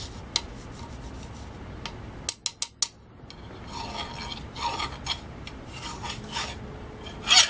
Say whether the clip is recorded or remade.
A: recorded